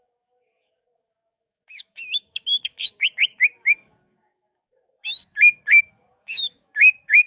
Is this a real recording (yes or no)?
no